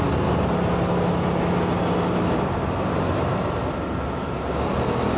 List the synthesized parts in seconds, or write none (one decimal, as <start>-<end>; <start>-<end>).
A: none